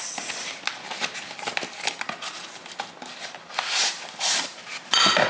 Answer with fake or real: real